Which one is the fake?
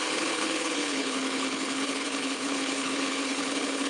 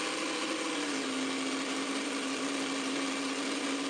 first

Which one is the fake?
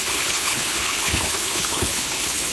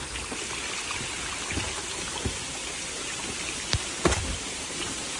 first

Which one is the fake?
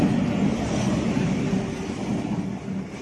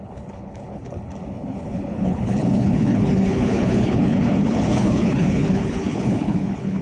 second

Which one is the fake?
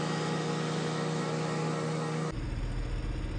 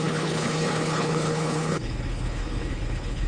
second